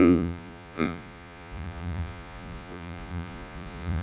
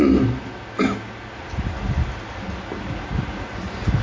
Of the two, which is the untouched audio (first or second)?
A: second